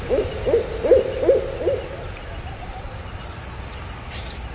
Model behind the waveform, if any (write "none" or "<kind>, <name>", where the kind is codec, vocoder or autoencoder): none